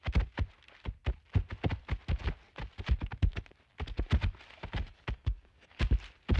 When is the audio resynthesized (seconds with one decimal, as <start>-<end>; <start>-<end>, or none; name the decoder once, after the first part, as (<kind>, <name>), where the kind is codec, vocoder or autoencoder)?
4.9-5.9 (codec, DAC)